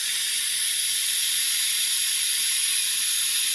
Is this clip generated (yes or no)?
no